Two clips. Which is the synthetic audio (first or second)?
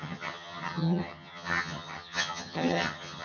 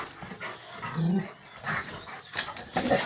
first